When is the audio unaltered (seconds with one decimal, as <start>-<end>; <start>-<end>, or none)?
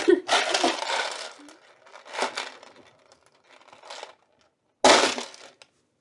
0.0-6.0